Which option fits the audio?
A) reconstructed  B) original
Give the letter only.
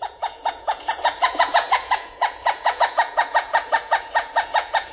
A